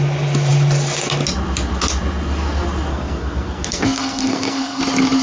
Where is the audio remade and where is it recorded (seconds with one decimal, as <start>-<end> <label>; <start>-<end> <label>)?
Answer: 0.0-2.9 recorded; 2.9-4.8 remade; 4.8-5.2 recorded